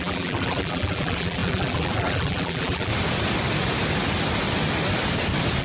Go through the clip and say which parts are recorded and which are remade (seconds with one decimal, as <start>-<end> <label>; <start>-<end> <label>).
0.0-2.9 remade; 2.9-5.6 recorded